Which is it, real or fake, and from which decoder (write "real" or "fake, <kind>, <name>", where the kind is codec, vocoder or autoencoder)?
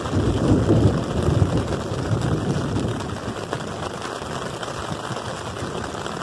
real